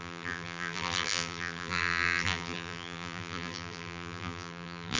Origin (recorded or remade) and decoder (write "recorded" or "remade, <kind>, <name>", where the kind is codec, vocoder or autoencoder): remade, vocoder, BigVGAN v2